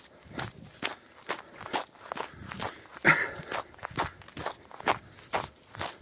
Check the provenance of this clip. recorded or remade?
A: recorded